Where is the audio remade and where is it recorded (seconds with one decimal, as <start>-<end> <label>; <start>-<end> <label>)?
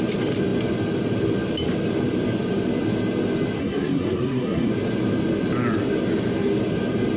0.0-3.6 recorded; 3.6-4.7 remade; 4.7-7.2 recorded